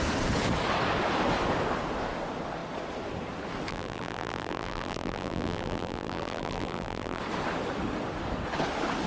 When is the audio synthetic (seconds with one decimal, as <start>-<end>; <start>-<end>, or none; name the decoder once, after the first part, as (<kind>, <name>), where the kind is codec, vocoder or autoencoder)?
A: 3.7-7.2 (vocoder, BigVGAN v2)